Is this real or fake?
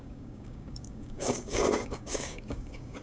fake